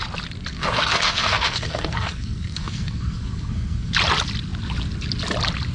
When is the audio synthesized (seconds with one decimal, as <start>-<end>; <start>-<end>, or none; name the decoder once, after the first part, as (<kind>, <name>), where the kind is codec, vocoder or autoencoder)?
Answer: 0.5-3.9 (codec, SNAC)